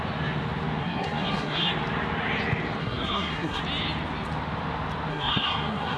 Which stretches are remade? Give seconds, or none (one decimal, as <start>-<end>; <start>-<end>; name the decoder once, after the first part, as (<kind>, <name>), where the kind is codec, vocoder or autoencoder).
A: 0.8-1.7 (codec, SNAC); 2.8-3.6; 5.1-6.0